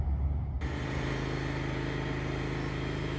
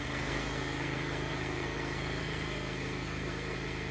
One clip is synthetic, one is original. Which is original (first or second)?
first